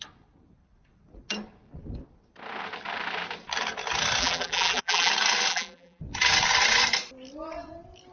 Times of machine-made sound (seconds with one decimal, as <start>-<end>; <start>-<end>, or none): 4.2-5.1; 5.5-6.0